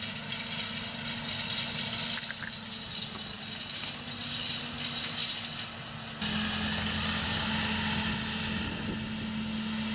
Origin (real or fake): real